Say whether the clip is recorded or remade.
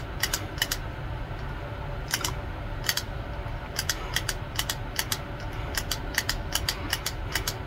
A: recorded